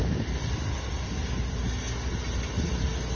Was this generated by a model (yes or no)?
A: no